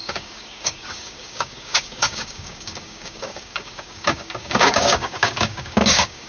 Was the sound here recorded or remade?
remade